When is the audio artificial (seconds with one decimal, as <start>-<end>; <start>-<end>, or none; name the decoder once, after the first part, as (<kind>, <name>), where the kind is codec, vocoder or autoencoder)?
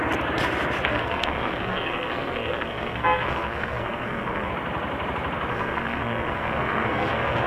0.9-4.5 (codec, SNAC); 5.5-7.5